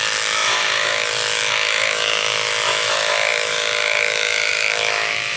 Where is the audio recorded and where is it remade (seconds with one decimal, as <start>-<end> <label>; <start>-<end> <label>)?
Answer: 0.0-5.4 remade

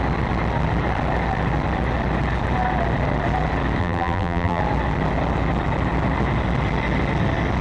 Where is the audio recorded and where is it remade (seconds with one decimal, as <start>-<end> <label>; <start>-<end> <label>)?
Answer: 0.0-3.8 recorded; 3.8-4.6 remade; 4.6-7.6 recorded